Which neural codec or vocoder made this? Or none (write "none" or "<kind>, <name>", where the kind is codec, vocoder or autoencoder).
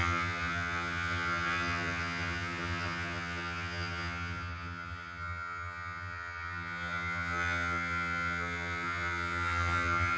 vocoder, HiFi-GAN